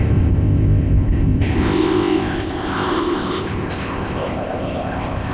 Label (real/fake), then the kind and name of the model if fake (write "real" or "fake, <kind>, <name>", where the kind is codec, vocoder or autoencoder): fake, codec, ZipCodec